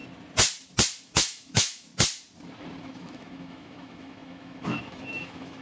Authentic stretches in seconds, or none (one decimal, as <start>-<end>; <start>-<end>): 0.0-1.0; 1.9-2.8